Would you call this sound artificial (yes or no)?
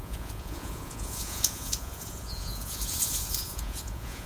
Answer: yes